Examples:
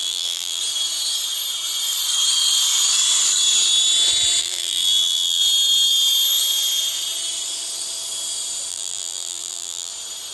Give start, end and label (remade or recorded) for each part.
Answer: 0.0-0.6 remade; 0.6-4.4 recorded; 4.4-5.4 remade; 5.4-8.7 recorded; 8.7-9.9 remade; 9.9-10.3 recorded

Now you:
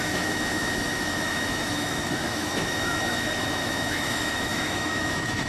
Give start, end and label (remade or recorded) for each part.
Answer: 0.0-5.5 remade